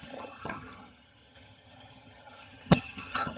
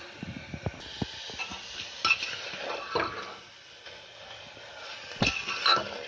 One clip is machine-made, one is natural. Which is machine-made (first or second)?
first